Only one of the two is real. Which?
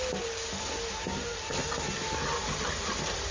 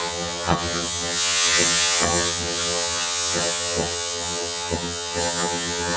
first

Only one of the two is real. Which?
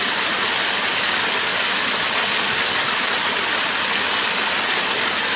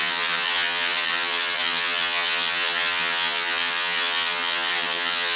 first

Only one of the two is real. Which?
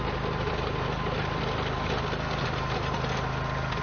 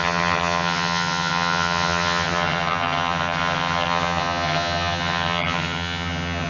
first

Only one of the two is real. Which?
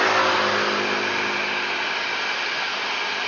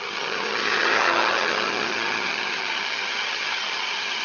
first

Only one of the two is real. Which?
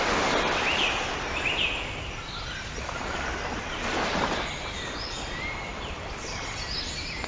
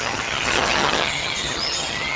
first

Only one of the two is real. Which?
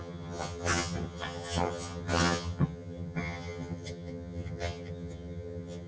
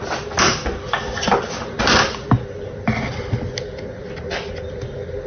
second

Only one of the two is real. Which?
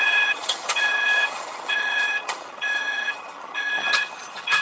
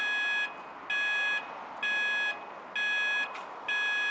second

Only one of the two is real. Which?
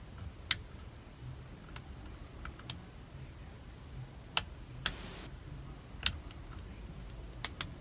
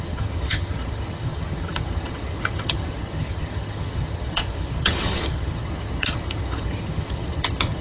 first